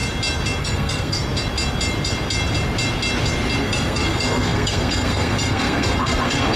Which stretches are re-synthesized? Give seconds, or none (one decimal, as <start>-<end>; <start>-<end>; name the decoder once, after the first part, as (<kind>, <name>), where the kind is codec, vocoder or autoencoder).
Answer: 0.6-1.2 (codec, SNAC); 3.6-6.6